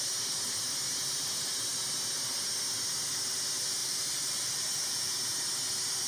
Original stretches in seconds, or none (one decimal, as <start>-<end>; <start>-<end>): 0.0-3.8; 5.1-6.1